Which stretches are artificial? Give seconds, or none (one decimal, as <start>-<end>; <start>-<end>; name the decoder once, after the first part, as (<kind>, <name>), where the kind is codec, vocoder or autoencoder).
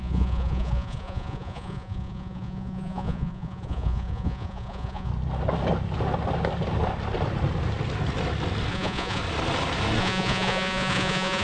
0.0-5.1 (vocoder, Vocos); 8.7-9.2; 10.0-11.4